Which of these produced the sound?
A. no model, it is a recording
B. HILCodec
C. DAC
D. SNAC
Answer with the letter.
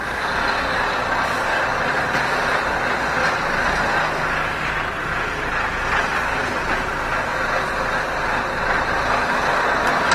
A